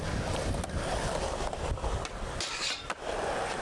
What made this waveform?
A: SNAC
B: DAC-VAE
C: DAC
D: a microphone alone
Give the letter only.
D